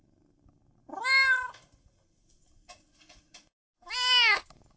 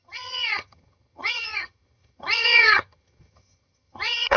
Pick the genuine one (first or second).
first